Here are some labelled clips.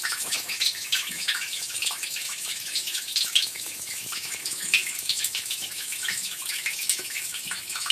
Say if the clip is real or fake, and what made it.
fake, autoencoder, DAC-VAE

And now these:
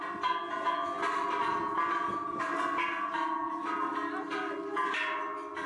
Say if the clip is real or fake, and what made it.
real